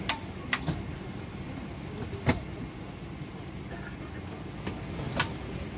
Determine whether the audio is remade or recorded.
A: recorded